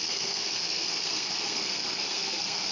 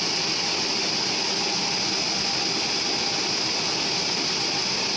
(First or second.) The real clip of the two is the second